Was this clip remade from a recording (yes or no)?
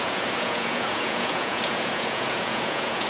yes